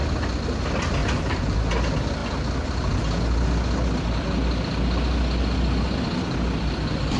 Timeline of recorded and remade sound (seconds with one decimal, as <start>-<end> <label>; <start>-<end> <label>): 0.0-1.0 recorded; 1.0-1.7 remade; 1.7-7.2 recorded